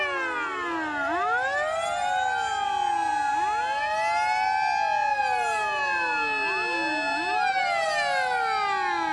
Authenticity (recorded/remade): recorded